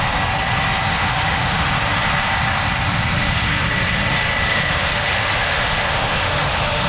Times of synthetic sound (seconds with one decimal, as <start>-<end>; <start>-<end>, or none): 0.9-1.7; 4.5-6.9